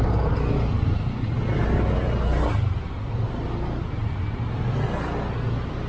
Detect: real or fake real